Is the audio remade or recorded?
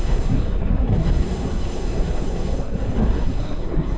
remade